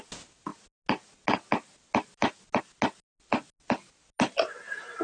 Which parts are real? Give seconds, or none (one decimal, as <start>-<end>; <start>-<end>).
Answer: 0.0-5.0